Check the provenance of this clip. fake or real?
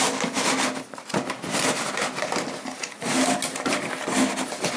real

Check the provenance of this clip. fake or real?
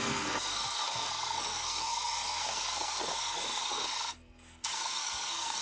fake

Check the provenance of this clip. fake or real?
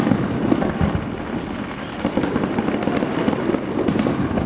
real